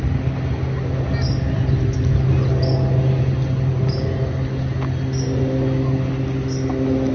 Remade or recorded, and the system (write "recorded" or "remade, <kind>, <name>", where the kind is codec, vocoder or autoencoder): recorded